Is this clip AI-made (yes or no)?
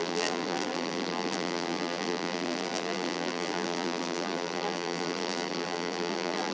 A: yes